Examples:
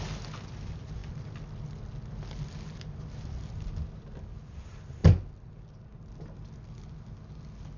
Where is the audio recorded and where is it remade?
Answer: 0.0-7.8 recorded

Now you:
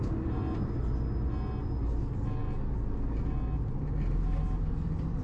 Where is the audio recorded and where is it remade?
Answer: 0.0-5.2 recorded

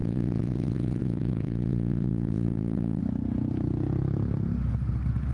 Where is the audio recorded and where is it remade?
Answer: 0.0-3.0 remade; 3.0-5.3 recorded

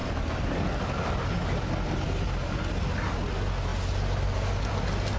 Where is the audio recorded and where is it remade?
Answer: 0.0-5.2 recorded

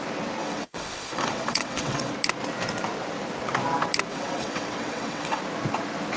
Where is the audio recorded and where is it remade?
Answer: 0.0-0.4 recorded; 0.4-2.1 remade; 2.1-4.1 recorded; 4.1-5.4 remade; 5.4-6.2 recorded

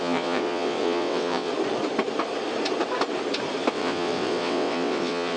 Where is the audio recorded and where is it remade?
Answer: 0.0-1.5 remade; 1.5-3.7 recorded; 3.7-5.4 remade

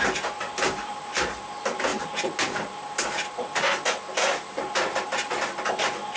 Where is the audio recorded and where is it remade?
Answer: 0.0-6.2 recorded

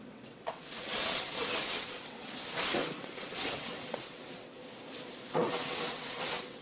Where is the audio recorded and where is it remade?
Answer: 0.0-4.6 remade; 4.6-5.3 recorded; 5.3-6.6 remade